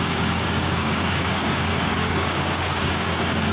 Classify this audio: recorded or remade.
remade